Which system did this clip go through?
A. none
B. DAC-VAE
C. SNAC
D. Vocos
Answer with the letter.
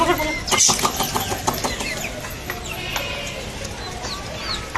A